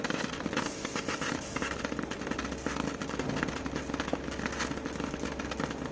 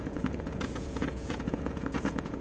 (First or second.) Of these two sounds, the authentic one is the first